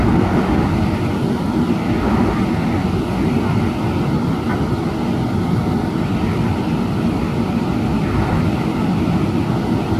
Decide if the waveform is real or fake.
real